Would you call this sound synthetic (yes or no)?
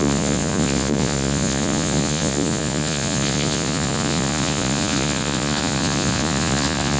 yes